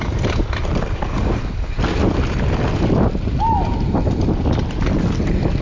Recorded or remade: recorded